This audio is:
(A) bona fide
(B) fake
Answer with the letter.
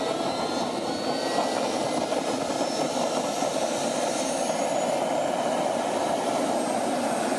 A